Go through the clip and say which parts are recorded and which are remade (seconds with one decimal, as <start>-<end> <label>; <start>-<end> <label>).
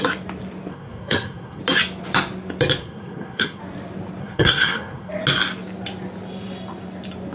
0.0-0.7 recorded; 0.7-1.6 remade; 1.6-2.8 recorded; 2.8-3.6 remade; 3.6-4.2 recorded; 4.2-5.1 remade; 5.1-7.3 recorded